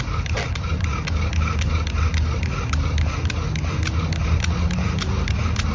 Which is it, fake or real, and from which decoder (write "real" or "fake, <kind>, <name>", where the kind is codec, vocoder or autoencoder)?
real